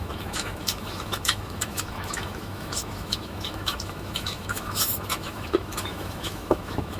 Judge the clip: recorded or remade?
remade